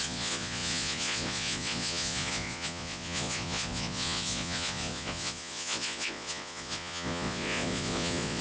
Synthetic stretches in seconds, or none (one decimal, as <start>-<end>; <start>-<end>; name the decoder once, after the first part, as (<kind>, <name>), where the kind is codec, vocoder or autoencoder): 0.0-8.4 (vocoder, Vocos)